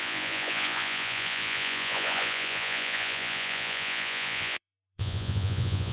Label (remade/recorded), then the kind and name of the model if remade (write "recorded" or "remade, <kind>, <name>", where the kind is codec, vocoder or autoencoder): remade, vocoder, Vocos